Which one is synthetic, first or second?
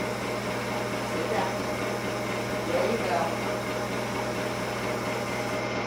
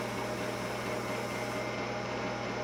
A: first